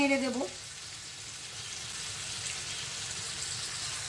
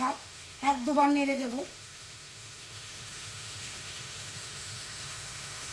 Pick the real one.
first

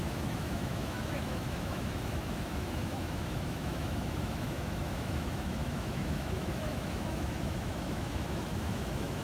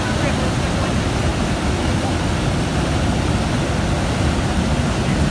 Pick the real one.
second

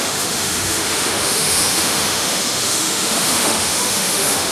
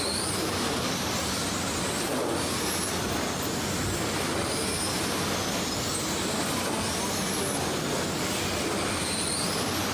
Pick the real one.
second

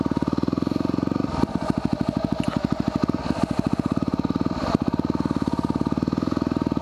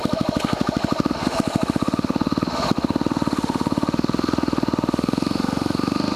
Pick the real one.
first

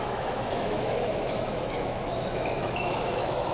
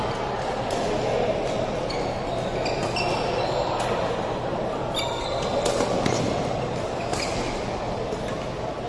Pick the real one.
second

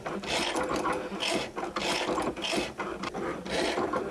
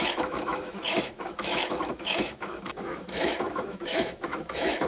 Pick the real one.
first